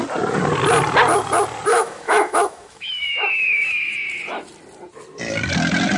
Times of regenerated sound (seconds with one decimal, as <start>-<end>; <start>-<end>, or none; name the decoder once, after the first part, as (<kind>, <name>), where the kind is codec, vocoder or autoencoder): 1.7-3.9 (autoencoder, DAC-VAE)